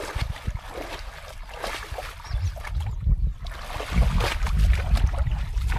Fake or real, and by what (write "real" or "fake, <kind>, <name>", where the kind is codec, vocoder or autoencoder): real